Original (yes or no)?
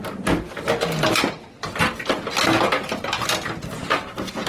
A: yes